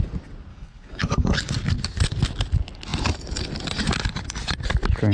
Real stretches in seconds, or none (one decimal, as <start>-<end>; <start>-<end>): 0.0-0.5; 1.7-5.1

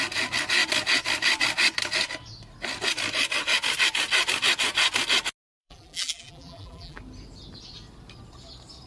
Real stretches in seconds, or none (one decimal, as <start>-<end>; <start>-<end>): 0.0-5.6; 7.0-8.9

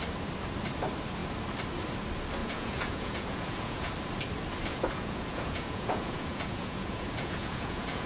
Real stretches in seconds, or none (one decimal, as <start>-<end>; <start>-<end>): 0.0-2.4; 3.9-4.7

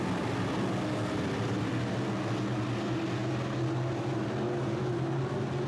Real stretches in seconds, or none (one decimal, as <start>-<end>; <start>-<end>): 0.0-5.7

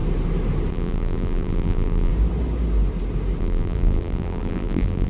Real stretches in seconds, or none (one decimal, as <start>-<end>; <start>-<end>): 0.0-0.7; 2.1-3.4

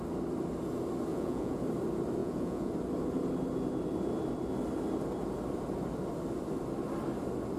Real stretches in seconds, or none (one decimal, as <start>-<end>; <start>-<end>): 0.0-1.1; 1.6-2.2; 2.7-7.6